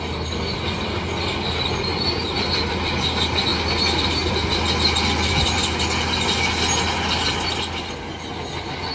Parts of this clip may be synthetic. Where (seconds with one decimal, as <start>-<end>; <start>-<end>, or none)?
none